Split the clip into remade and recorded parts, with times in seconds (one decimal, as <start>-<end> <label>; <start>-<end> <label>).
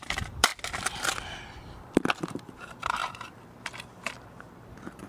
0.0-0.5 remade; 0.5-2.3 recorded; 2.3-5.1 remade